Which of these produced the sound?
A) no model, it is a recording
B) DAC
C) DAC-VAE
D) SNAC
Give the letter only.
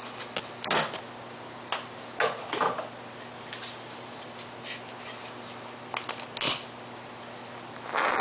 A